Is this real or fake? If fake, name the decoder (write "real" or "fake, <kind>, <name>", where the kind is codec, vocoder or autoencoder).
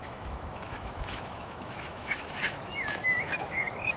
fake, autoencoder, DAC-VAE